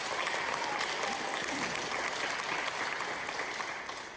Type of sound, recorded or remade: recorded